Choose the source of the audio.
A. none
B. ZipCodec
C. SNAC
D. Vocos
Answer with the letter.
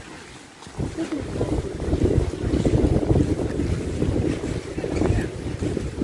A